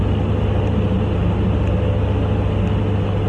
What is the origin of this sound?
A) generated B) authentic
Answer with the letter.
B